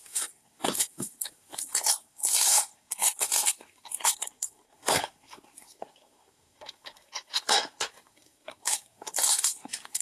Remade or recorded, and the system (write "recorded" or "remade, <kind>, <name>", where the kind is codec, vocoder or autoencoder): remade, codec, SNAC